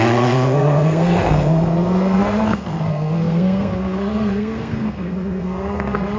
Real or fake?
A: fake